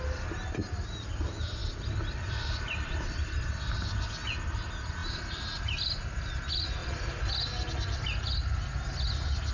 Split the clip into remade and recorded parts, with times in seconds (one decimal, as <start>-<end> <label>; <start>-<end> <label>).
0.0-1.6 recorded; 1.6-3.6 remade; 3.6-5.0 recorded; 5.0-6.3 remade; 6.3-6.8 recorded; 6.8-7.7 remade; 7.7-9.5 recorded